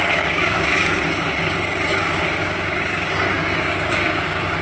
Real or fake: fake